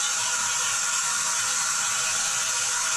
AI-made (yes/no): no